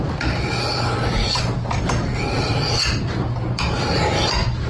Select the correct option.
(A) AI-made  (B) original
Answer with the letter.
B